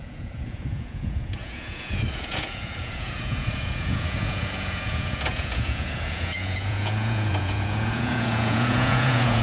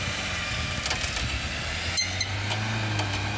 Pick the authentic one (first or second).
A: second